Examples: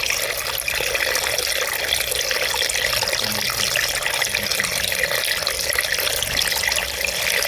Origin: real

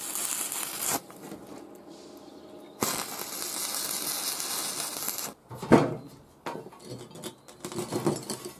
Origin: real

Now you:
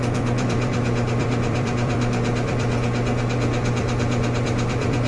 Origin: fake